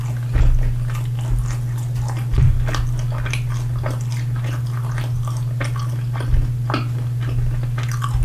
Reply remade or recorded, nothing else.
recorded